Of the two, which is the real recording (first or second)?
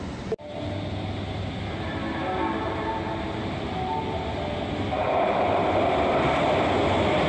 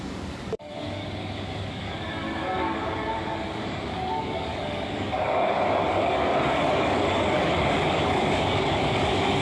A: first